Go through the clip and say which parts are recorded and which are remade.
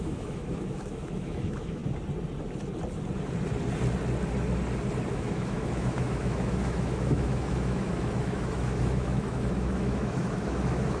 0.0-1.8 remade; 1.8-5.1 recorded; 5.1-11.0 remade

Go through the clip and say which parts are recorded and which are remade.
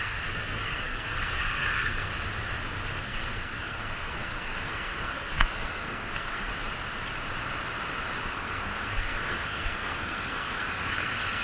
0.0-2.1 remade; 2.1-3.0 recorded; 3.0-6.5 remade; 6.5-8.2 recorded; 8.2-11.4 remade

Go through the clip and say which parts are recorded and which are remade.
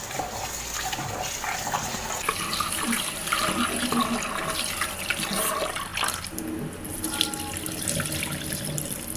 0.0-1.8 recorded; 1.8-3.5 remade; 3.5-9.2 recorded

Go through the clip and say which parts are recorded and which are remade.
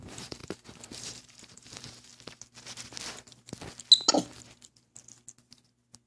0.0-2.1 remade; 2.1-6.1 recorded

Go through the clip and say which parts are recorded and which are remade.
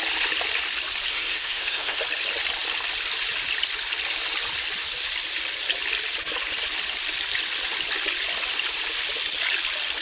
0.0-1.1 recorded; 1.1-2.0 remade; 2.0-10.0 recorded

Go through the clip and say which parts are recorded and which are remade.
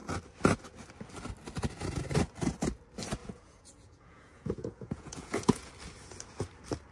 0.0-3.2 recorded; 3.2-5.7 remade; 5.7-6.9 recorded